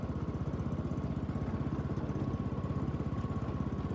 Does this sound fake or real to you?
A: real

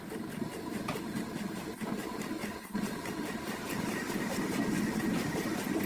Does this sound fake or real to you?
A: real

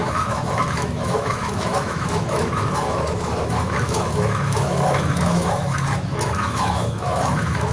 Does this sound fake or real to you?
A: fake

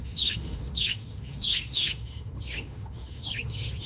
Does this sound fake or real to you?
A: fake